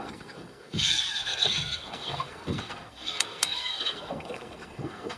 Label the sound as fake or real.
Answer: fake